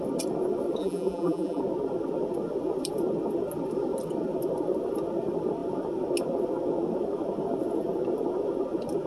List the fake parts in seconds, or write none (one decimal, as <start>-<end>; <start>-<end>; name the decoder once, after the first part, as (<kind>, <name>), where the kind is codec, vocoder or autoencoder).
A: 0.8-1.6 (vocoder, BigVGAN v2)